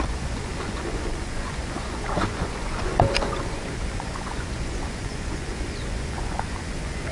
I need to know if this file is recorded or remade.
remade